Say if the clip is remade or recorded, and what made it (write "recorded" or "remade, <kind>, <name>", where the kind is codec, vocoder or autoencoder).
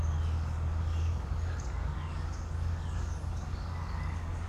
remade, codec, DAC